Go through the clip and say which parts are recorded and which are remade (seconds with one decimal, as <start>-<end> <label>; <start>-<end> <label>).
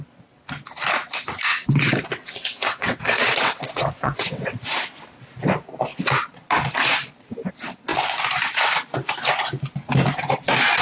0.0-1.5 recorded; 1.5-4.6 remade; 4.6-10.8 recorded